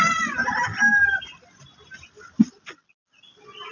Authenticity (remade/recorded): recorded